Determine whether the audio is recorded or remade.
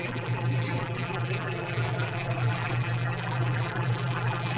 remade